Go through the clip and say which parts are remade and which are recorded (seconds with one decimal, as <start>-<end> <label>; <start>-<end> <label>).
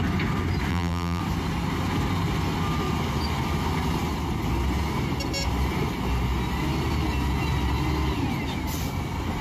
0.0-0.7 recorded; 0.7-1.2 remade; 1.2-9.4 recorded